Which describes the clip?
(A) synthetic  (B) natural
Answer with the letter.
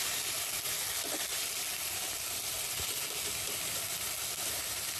B